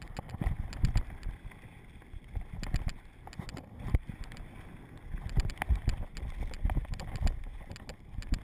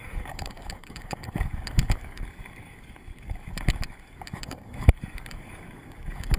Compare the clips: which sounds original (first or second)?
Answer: first